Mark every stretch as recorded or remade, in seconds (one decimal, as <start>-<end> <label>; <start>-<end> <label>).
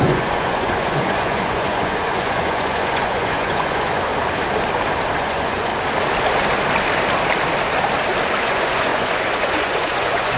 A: 0.0-4.1 remade; 4.1-5.2 recorded; 5.2-5.7 remade; 5.7-8.4 recorded; 8.4-10.4 remade